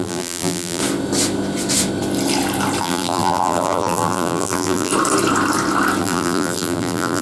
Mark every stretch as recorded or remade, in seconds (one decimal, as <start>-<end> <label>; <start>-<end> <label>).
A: 0.0-0.8 remade; 0.8-2.8 recorded; 2.8-4.9 remade; 4.9-6.0 recorded; 6.0-7.2 remade